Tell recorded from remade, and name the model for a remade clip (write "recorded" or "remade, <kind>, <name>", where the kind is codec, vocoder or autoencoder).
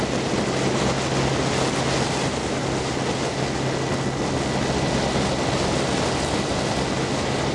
recorded